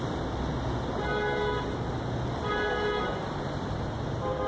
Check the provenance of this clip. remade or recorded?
recorded